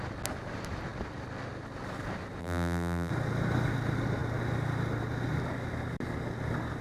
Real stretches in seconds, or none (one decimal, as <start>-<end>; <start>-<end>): 0.0-2.4; 3.1-6.8